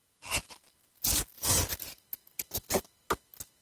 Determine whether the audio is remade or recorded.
recorded